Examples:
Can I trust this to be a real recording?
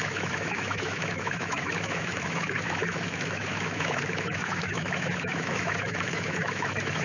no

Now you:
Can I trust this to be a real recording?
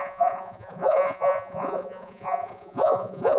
no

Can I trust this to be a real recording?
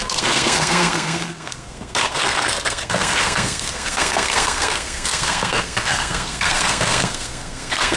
no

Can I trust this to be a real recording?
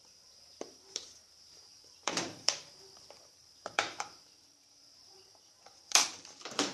no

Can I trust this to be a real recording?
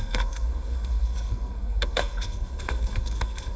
no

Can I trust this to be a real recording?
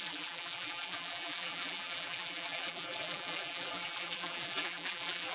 no